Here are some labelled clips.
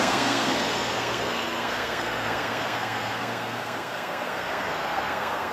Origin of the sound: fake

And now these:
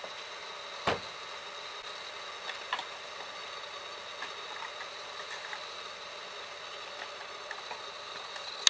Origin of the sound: real